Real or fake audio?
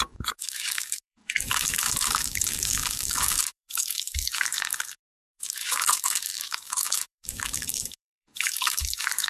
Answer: fake